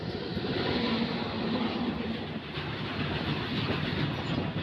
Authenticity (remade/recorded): recorded